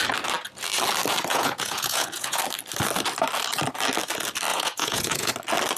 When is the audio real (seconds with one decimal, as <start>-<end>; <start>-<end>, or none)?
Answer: 0.0-1.3; 2.4-4.5; 5.3-5.8